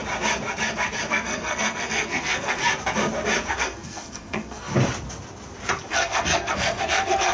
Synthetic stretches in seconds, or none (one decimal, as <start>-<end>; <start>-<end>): 1.1-2.6; 3.5-4.7; 5.9-7.3

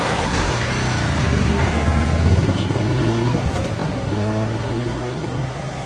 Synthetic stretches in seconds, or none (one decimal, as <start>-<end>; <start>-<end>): 0.0-0.7; 1.2-5.9

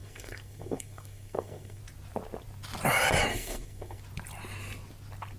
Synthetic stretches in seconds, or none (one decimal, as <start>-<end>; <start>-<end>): 0.0-1.8; 3.3-4.0

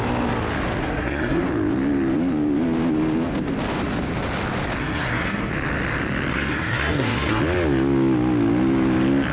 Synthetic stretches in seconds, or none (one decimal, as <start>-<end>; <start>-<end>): 0.8-1.4; 4.8-5.5; 6.3-7.4

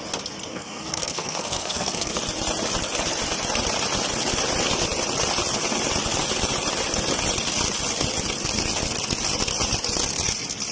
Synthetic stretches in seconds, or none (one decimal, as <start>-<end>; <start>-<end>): 0.5-2.2

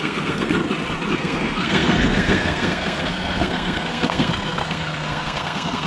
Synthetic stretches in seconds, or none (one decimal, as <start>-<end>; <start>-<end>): 0.0-0.6; 1.1-5.9